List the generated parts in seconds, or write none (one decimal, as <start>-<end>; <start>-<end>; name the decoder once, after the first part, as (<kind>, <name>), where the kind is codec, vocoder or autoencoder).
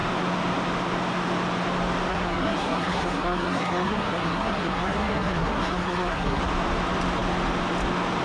2.1-6.4 (codec, SNAC)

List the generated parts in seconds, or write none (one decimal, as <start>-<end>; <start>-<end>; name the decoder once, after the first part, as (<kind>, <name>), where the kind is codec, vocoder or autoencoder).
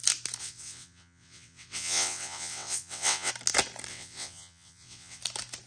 0.4-3.3 (vocoder, WaveNeXt); 3.9-5.2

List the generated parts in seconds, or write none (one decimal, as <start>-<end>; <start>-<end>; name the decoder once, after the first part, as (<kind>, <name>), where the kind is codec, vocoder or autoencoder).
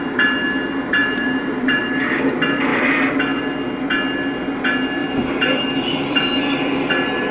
1.0-1.8 (vocoder, BigVGAN v2); 2.7-3.4; 5.0-7.3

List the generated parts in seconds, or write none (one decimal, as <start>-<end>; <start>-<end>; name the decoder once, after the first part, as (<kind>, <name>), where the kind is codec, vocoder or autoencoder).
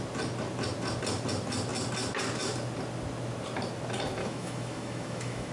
4.2-5.5 (autoencoder, DAC-VAE)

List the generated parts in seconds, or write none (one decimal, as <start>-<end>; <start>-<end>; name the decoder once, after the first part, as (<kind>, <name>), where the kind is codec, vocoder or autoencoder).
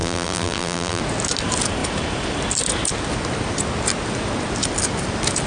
0.0-1.0 (vocoder, BigVGAN v2)